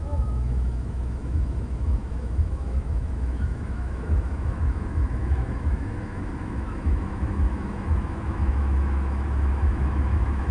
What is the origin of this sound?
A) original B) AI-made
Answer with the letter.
B